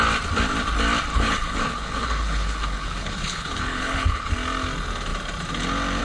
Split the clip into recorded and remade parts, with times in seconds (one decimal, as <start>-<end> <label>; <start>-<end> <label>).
0.0-1.1 recorded; 1.1-4.3 remade; 4.3-6.0 recorded